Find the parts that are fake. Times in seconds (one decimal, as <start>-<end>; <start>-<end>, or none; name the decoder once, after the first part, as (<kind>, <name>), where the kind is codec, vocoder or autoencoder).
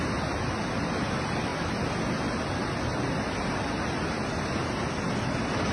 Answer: none